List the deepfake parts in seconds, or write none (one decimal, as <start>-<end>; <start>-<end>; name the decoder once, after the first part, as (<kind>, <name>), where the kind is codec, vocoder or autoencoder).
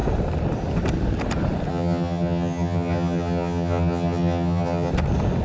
1.7-4.9 (vocoder, HiFi-GAN)